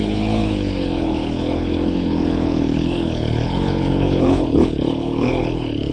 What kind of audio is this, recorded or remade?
remade